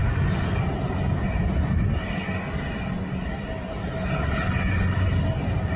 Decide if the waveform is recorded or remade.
recorded